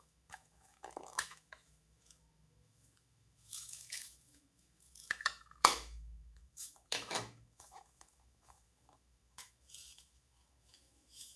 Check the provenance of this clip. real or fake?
fake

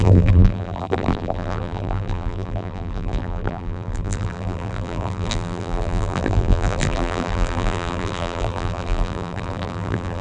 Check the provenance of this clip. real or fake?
fake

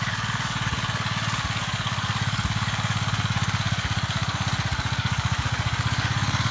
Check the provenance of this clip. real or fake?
fake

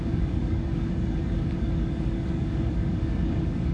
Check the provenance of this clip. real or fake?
fake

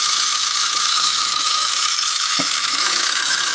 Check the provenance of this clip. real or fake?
fake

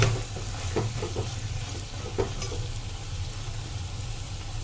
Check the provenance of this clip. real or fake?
real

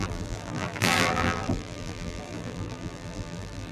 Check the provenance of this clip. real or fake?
fake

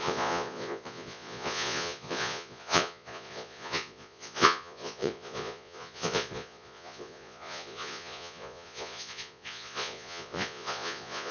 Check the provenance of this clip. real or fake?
fake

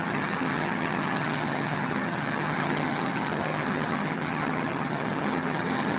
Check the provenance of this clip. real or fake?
fake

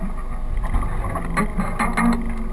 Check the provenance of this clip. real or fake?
real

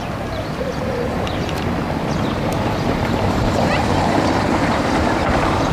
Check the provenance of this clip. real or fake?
fake